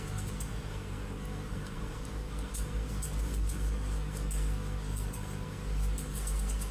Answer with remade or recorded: remade